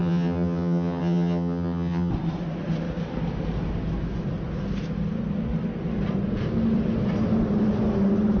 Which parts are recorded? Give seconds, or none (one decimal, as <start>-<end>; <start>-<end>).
2.1-8.4